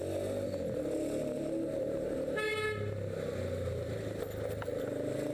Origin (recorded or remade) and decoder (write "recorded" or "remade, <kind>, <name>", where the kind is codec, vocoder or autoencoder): recorded